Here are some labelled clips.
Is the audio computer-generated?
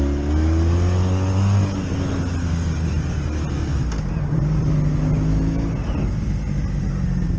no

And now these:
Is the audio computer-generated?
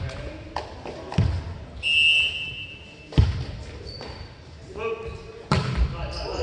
no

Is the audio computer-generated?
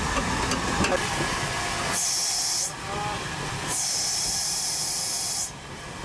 no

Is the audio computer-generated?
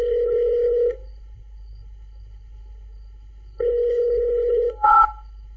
yes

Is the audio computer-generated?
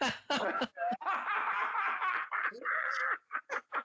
no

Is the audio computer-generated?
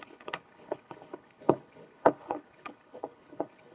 yes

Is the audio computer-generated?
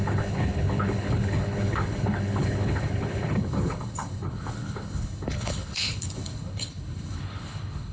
yes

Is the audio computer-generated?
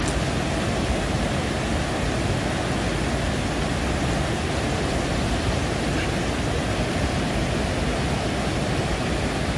no